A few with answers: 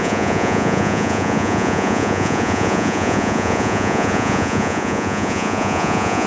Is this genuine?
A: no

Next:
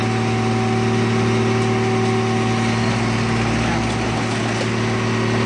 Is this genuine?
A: yes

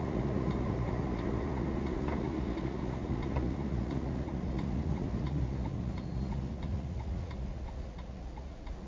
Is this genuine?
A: no